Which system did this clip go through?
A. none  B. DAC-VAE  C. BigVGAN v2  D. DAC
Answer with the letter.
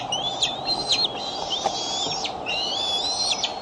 A